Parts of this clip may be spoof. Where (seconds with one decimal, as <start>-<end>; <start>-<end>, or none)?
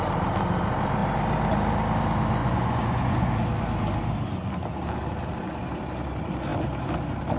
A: 2.4-3.3